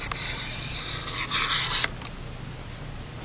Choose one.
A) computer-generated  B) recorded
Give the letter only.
B